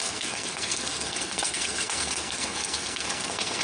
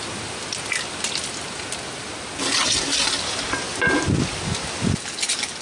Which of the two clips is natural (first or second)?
second